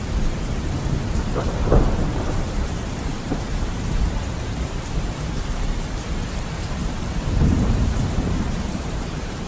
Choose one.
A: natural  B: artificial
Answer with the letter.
B